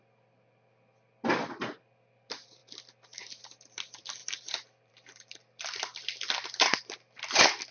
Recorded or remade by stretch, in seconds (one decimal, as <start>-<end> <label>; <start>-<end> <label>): 0.0-7.7 recorded